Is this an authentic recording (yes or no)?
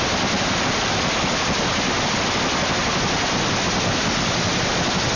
yes